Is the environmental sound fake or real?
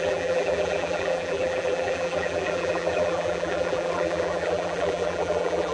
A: fake